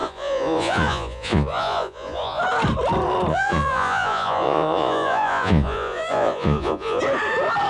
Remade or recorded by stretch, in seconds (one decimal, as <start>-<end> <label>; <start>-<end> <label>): 0.0-2.4 remade; 2.4-3.3 recorded; 3.3-7.0 remade; 7.0-7.7 recorded